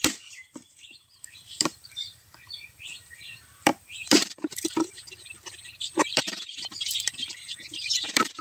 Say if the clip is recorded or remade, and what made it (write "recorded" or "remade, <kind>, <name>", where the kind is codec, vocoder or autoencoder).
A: remade, vocoder, BigVGAN v2